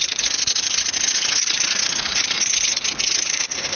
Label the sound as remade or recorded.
remade